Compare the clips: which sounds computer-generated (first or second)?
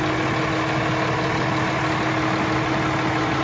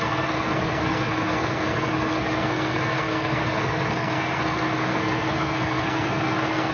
second